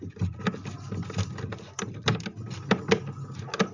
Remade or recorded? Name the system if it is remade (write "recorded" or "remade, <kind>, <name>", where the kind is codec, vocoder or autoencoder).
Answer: recorded